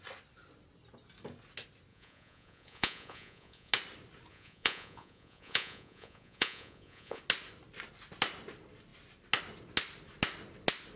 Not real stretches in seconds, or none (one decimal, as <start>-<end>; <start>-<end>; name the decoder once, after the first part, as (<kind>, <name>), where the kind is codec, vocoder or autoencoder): 1.9-3.7 (vocoder, Vocos); 4.3-7.2